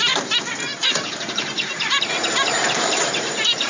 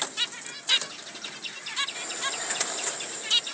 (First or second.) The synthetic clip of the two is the first